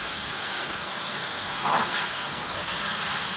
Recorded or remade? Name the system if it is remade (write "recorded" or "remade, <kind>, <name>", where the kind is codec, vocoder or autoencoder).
remade, codec, SNAC